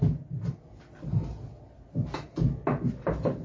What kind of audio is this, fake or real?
real